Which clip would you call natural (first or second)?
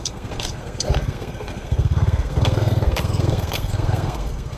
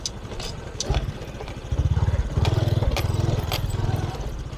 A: second